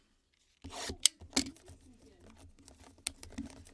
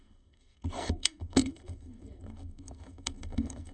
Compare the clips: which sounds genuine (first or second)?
first